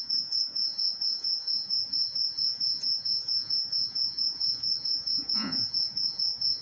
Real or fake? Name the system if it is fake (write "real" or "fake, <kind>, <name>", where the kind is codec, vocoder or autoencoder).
fake, vocoder, Vocos